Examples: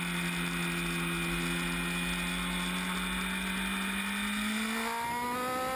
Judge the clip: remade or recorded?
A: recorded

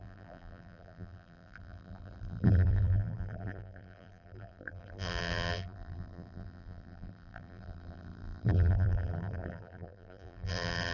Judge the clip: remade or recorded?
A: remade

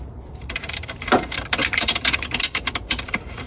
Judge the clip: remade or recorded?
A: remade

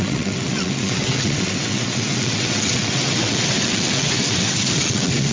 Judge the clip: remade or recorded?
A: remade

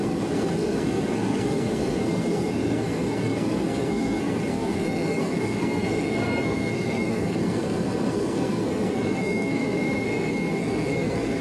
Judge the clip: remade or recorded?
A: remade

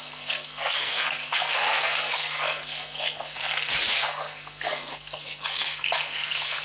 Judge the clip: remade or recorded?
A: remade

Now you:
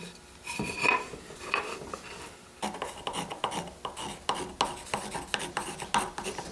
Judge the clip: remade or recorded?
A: recorded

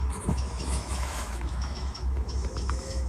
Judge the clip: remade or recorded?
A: remade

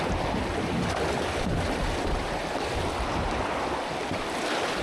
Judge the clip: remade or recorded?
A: recorded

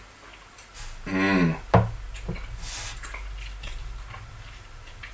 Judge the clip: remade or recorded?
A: recorded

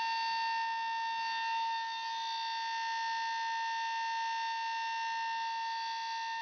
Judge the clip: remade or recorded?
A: recorded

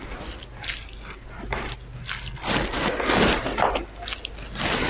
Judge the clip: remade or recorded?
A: recorded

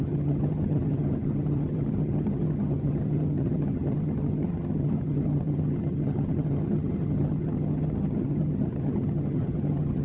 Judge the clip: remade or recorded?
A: remade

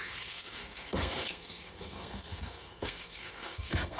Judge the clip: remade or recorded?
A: remade